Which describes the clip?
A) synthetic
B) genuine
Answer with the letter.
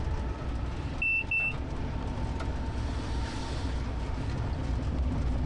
B